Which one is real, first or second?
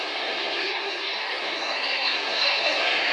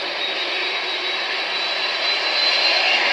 second